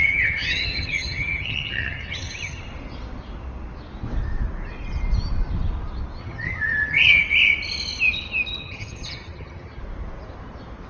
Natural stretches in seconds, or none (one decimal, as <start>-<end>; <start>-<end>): 2.6-6.2; 7.2-8.6; 9.8-10.9